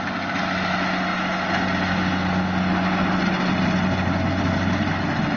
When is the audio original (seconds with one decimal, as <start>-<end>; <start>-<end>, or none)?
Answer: 0.0-5.4